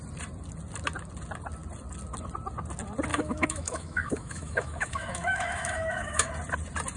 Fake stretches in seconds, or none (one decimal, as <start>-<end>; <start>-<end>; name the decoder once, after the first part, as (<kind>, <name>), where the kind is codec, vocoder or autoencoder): 3.1-6.3 (autoencoder, DAC-VAE)